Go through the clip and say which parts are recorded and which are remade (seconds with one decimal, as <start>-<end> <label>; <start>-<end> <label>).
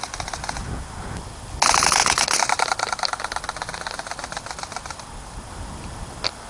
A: 0.0-6.5 recorded